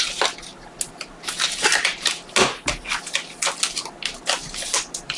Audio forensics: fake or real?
real